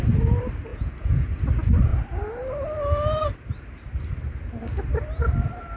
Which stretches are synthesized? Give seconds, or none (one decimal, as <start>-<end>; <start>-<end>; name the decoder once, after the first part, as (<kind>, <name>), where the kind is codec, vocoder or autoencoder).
0.7-1.4 (vocoder, Vocos)